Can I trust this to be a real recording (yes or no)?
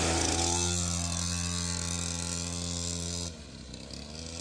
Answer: yes